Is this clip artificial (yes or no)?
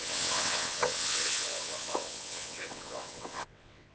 yes